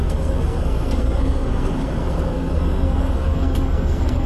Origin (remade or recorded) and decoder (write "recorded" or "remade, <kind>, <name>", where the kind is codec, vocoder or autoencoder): remade, codec, SNAC